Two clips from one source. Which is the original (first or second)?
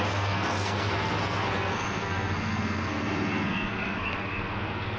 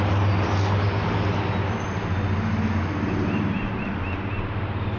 second